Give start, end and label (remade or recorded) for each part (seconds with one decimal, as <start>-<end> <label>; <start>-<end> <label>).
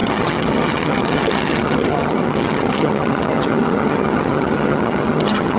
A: 0.0-5.6 remade